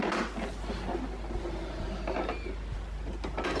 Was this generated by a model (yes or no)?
no